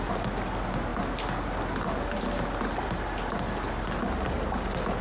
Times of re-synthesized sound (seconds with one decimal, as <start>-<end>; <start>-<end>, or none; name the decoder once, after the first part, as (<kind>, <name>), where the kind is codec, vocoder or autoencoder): none